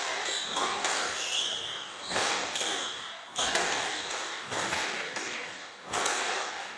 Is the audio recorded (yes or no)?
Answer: no